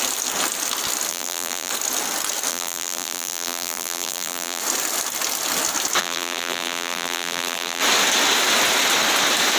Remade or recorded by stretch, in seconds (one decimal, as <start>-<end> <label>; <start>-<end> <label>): 0.0-1.1 recorded; 1.1-1.7 remade; 1.7-2.5 recorded; 2.5-4.6 remade; 4.6-6.0 recorded; 6.0-7.8 remade; 7.8-9.6 recorded